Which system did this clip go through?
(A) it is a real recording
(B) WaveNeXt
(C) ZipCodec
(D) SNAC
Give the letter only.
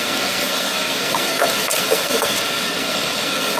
D